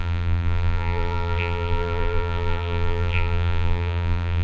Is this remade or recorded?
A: remade